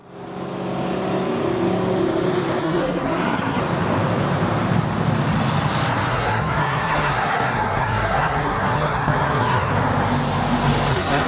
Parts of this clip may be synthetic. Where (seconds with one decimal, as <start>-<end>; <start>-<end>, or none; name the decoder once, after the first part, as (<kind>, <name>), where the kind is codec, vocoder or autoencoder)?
2.6-3.6 (codec, SNAC); 6.1-9.7; 10.9-11.3